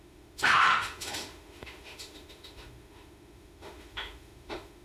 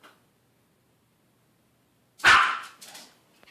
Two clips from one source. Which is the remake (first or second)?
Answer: first